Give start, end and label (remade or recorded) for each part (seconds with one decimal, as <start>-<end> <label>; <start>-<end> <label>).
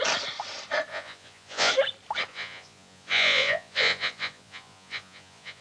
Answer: 0.0-0.9 recorded; 0.9-1.7 remade; 1.7-2.3 recorded; 2.3-5.6 remade